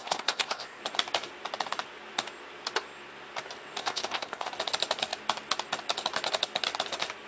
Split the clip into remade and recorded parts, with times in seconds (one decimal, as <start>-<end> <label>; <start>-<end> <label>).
0.0-0.8 remade; 0.8-3.8 recorded; 3.8-4.5 remade; 4.5-7.3 recorded